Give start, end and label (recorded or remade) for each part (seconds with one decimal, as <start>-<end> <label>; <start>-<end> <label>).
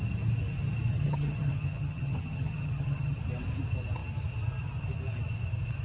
0.0-0.9 recorded; 0.9-3.2 remade; 3.2-5.8 recorded